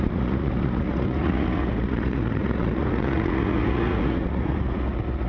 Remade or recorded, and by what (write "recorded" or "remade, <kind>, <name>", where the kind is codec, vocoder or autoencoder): remade, vocoder, Vocos